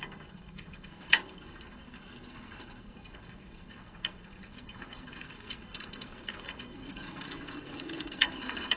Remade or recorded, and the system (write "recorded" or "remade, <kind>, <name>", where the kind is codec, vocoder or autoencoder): remade, codec, SNAC